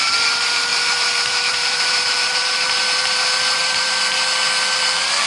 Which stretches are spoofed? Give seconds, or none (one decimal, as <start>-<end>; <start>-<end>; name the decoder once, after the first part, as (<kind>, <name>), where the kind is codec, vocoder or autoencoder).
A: 0.7-3.9 (vocoder, BigVGAN v2)